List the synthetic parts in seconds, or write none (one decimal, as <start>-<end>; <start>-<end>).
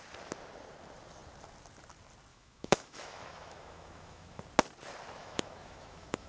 2.3-4.4; 5.2-6.3